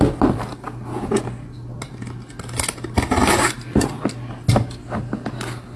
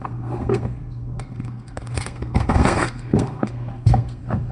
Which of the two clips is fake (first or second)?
second